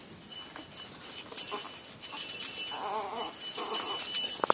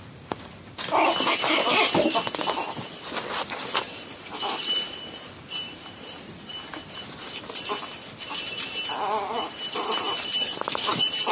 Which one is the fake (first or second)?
second